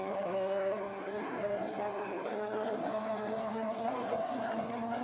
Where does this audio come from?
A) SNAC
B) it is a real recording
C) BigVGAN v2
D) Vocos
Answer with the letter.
A